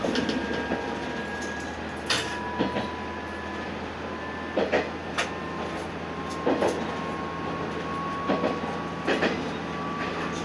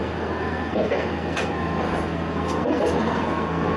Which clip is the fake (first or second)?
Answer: second